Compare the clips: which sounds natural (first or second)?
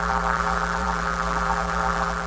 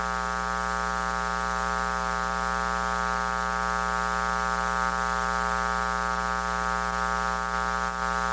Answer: second